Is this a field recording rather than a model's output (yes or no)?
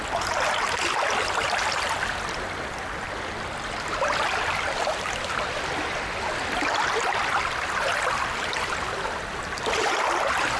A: yes